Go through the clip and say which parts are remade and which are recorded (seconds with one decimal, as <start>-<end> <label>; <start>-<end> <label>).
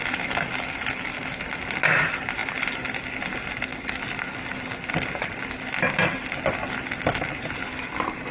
0.0-8.3 recorded